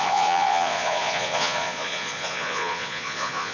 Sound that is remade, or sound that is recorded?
remade